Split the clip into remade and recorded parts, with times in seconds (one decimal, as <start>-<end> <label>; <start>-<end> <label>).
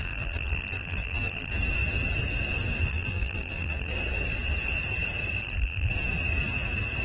0.0-1.5 remade; 1.5-2.9 recorded; 2.9-3.9 remade; 3.9-5.4 recorded; 5.4-5.9 remade; 5.9-7.0 recorded